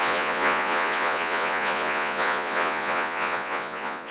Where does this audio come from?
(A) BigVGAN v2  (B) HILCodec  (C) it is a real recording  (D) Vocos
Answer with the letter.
D